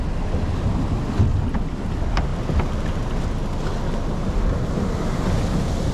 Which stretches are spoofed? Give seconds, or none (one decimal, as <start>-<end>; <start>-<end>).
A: none